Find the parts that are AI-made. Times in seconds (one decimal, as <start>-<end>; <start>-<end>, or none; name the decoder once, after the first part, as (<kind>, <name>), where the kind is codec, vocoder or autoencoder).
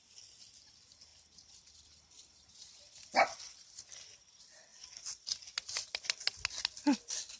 none